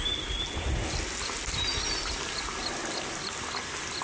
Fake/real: real